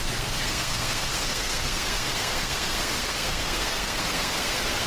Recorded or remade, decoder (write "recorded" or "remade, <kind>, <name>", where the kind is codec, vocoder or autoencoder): remade, codec, SNAC